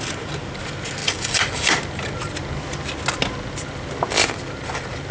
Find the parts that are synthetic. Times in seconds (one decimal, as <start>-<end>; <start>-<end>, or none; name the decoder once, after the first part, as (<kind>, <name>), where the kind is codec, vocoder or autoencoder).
none